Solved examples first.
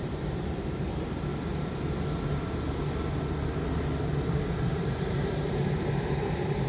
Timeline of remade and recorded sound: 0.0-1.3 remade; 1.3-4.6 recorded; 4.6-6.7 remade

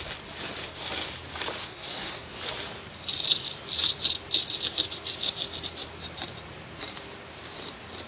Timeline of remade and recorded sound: 0.0-1.6 recorded; 1.6-2.4 remade; 2.4-8.1 recorded

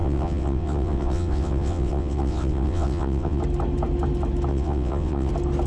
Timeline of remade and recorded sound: 0.0-3.4 remade; 3.4-4.5 recorded; 4.5-5.3 remade; 5.3-5.7 recorded

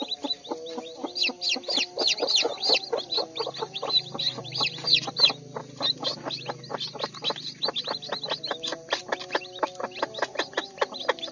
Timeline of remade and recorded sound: 0.0-11.3 recorded

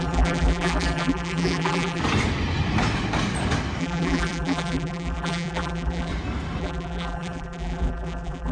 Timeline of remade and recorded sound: 0.0-2.0 remade; 2.0-3.8 recorded; 3.8-6.1 remade; 6.1-6.6 recorded; 6.6-8.5 remade

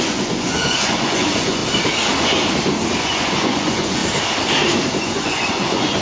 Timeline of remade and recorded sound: 0.0-1.6 remade; 1.6-3.0 recorded; 3.0-4.0 remade; 4.0-5.0 recorded; 5.0-6.0 remade